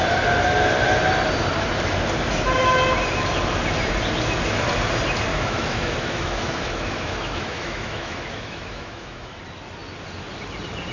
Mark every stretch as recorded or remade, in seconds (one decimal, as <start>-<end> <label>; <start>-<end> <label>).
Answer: 0.0-5.3 recorded; 5.3-9.4 remade; 9.4-10.9 recorded